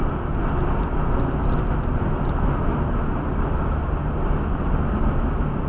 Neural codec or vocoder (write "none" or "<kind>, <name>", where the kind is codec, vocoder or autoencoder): none